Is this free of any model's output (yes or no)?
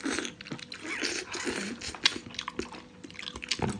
yes